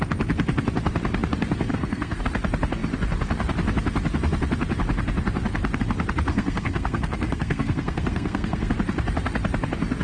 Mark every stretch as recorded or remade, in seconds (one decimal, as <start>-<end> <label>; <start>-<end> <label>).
0.0-1.7 recorded; 1.7-2.2 remade; 2.2-6.3 recorded; 6.3-8.7 remade; 8.7-10.0 recorded

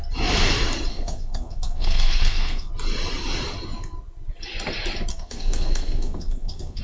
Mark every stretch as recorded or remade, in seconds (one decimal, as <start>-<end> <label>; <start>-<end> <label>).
0.0-0.9 recorded; 0.9-2.7 remade; 2.7-5.1 recorded; 5.1-6.8 remade

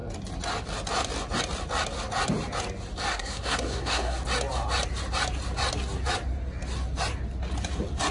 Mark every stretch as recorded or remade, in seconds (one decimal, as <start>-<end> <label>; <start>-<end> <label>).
0.0-3.1 recorded; 3.1-4.2 remade; 4.2-8.1 recorded